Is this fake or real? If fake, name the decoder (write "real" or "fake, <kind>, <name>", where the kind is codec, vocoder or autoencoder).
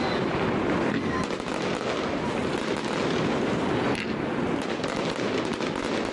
real